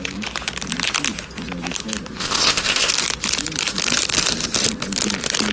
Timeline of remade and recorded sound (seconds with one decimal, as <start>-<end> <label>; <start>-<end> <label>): 0.0-2.2 recorded; 2.2-2.9 remade; 2.9-5.5 recorded